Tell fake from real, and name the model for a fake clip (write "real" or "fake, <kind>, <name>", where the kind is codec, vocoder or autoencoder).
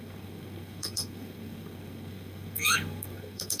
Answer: fake, codec, SNAC